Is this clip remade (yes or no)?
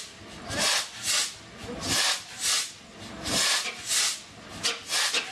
no